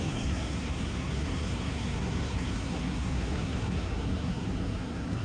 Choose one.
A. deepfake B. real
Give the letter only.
A